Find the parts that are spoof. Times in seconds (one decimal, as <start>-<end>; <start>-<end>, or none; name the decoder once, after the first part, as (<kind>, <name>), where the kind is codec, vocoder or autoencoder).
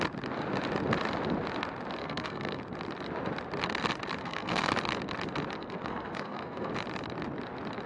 2.0-2.6 (codec, SNAC); 4.2-4.7; 5.6-6.7